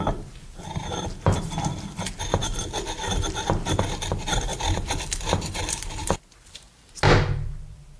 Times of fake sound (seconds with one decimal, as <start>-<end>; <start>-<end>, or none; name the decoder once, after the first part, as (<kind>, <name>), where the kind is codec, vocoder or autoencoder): 4.5-6.2 (vocoder, BigVGAN v2)